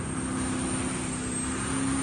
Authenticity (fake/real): real